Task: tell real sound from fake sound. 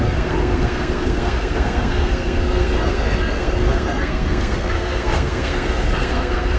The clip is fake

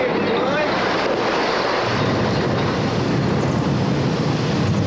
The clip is real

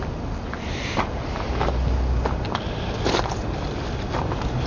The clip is real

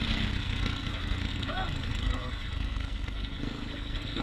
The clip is fake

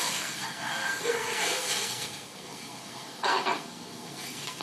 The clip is fake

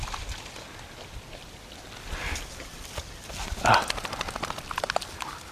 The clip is real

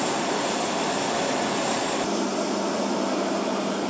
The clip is real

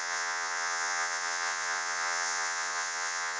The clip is fake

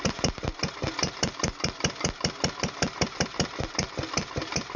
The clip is real